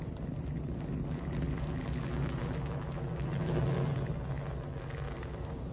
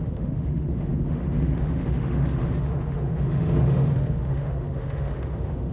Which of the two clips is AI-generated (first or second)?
second